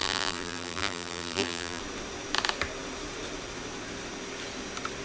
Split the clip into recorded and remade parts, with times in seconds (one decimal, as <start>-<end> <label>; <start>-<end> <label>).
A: 0.0-1.8 remade; 1.8-5.0 recorded